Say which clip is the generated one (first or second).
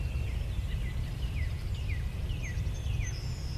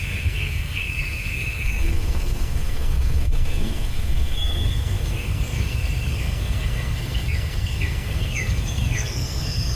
second